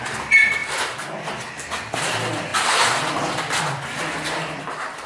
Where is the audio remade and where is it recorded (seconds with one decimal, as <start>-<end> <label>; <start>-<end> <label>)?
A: 0.0-5.1 recorded